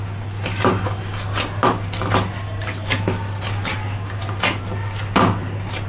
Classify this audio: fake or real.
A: real